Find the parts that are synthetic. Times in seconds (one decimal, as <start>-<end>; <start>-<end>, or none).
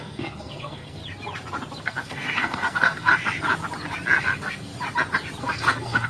0.0-1.0; 1.8-3.1; 4.2-4.7; 5.4-6.1